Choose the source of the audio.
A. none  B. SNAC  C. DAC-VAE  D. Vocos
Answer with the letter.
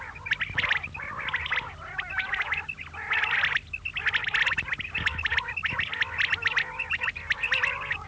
A